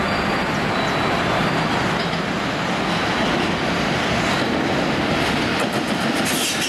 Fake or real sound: real